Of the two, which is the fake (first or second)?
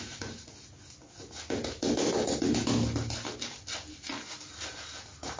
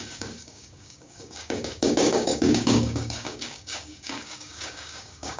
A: second